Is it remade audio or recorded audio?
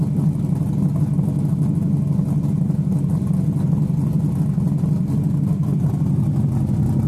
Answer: recorded